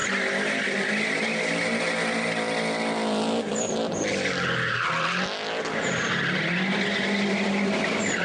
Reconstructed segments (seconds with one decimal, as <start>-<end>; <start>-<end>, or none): none